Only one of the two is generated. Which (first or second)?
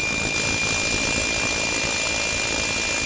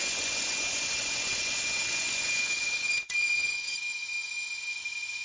second